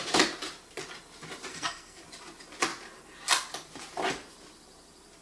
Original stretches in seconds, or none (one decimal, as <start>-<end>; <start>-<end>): 0.0-1.5; 2.0-5.2

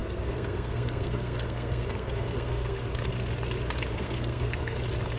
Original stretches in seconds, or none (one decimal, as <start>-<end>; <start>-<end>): 3.1-3.9; 4.8-5.2

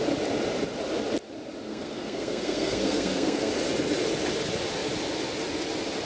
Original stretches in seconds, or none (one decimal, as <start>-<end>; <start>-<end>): 0.0-1.7; 3.5-6.1

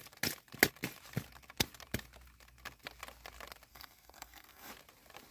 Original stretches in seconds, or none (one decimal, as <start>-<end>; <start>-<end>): 0.0-3.7; 4.7-5.3

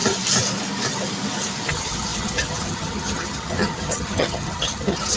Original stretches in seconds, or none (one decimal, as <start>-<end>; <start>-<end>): 0.0-1.7

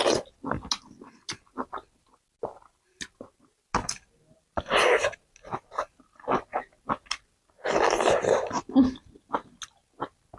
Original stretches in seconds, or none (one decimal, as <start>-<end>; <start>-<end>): 0.0-10.4

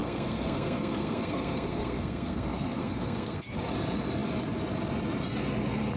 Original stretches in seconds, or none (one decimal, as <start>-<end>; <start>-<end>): 3.6-6.0

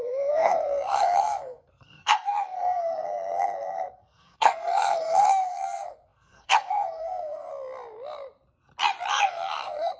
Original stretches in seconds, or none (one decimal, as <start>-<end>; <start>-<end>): 7.5-9.1